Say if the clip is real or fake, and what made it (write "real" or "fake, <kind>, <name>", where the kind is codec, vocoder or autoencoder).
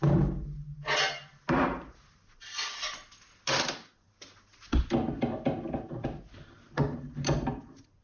real